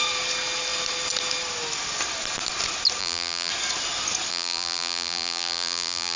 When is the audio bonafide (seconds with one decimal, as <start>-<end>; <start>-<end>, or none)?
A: 0.0-3.0; 3.5-4.3